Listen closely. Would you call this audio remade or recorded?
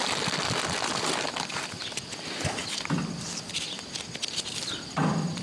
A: recorded